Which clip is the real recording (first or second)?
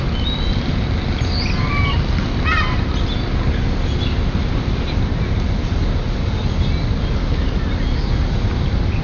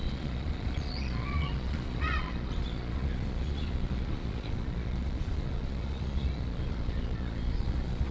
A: first